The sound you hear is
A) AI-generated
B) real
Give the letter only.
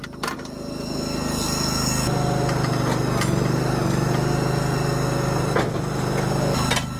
B